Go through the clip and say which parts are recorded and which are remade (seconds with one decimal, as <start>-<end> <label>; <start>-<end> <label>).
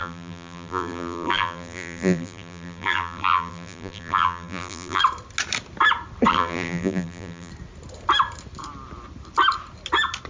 0.0-5.0 remade; 5.0-6.3 recorded; 6.3-7.5 remade; 7.5-10.3 recorded